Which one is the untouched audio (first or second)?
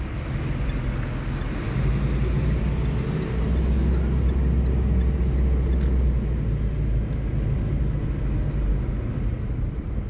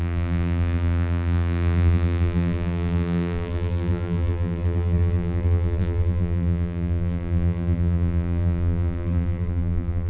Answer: first